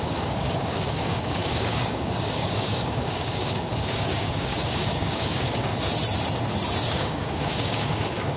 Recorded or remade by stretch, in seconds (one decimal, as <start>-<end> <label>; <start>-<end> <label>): 0.0-5.7 remade; 5.7-6.9 recorded; 6.9-8.4 remade